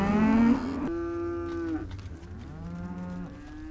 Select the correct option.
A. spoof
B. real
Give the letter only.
B